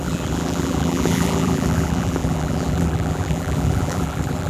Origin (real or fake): fake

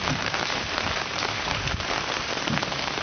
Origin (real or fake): fake